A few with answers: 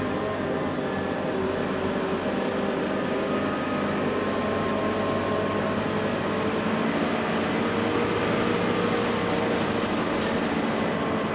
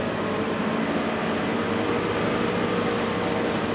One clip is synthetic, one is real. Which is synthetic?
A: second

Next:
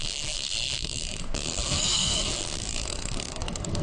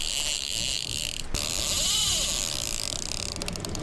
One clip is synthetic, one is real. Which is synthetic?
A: first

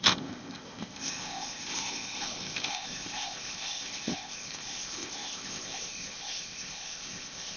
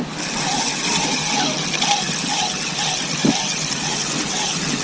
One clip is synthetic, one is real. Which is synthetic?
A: first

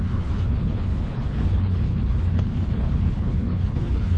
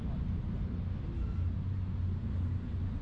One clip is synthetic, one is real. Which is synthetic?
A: first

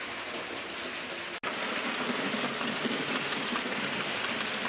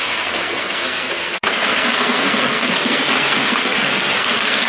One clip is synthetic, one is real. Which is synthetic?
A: second